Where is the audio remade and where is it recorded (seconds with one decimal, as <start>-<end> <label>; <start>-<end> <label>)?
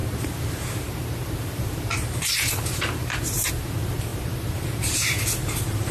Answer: 0.0-5.9 remade